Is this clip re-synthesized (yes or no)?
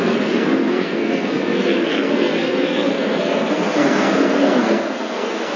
yes